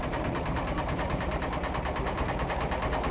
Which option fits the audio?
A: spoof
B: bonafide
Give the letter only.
B